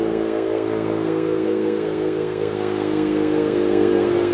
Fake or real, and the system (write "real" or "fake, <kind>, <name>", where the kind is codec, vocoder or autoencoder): fake, codec, SNAC